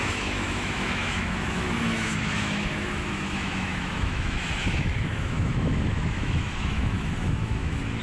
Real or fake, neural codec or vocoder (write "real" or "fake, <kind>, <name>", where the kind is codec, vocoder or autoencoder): fake, autoencoder, DAC-VAE